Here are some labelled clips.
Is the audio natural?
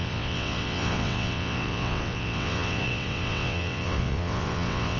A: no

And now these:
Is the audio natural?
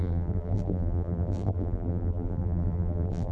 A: no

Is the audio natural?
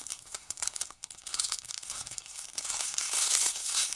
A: no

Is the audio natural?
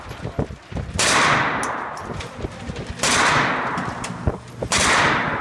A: yes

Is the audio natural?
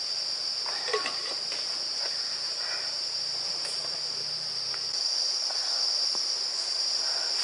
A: yes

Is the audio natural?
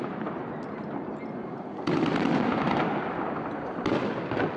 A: yes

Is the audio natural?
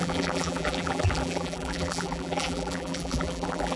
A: no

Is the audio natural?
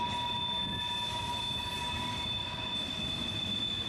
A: yes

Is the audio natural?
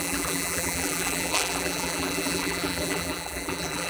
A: no